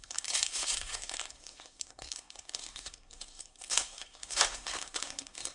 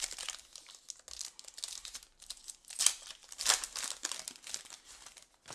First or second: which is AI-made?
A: first